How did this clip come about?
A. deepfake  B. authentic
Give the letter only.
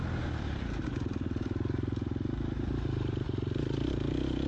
A